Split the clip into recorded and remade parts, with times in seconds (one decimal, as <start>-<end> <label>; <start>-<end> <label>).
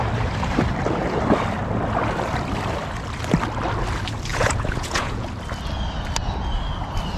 0.0-4.3 recorded; 4.3-5.3 remade; 5.3-7.2 recorded